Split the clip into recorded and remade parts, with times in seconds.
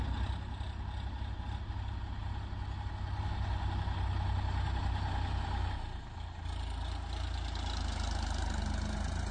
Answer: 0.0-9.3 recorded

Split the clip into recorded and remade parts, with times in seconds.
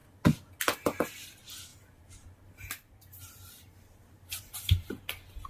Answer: 0.0-1.7 recorded; 1.7-5.0 remade; 5.0-5.5 recorded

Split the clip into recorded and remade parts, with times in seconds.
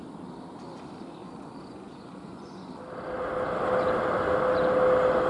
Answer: 0.0-1.2 recorded; 1.2-2.8 remade; 2.8-5.3 recorded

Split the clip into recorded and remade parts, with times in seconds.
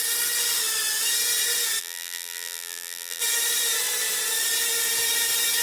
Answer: 0.0-1.8 recorded; 1.8-3.2 remade; 3.2-5.6 recorded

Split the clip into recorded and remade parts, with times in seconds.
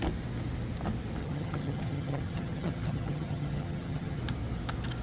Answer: 0.0-1.2 recorded; 1.2-4.2 remade; 4.2-5.0 recorded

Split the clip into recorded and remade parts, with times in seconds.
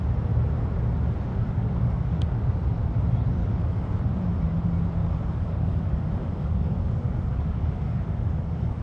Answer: 0.0-1.3 recorded; 1.3-2.4 remade; 2.4-3.4 recorded; 3.4-4.0 remade; 4.0-5.0 recorded; 5.0-8.8 remade